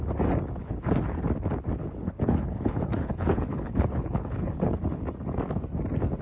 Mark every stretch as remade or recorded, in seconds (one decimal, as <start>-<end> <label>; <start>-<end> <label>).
0.0-0.6 recorded; 0.6-1.2 remade; 1.2-1.8 recorded; 1.8-5.0 remade; 5.0-6.2 recorded